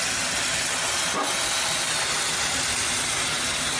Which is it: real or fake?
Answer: real